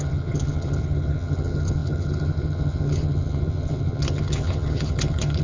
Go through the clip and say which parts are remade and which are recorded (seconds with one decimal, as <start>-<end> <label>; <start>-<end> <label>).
0.0-5.4 remade

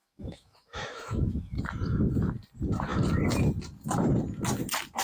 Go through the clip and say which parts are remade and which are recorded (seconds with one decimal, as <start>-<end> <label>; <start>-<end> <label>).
0.0-1.6 remade; 1.6-5.0 recorded

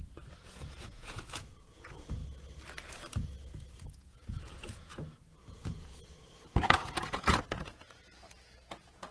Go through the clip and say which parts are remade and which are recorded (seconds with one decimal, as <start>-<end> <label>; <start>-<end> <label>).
0.0-2.2 remade; 2.2-3.5 recorded; 3.5-9.1 remade

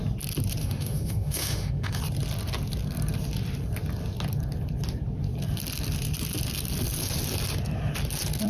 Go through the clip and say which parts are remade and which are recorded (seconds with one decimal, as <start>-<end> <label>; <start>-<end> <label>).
0.0-0.6 recorded; 0.6-2.0 remade; 2.0-8.5 recorded